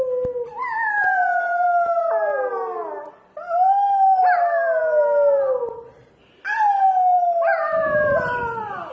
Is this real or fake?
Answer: real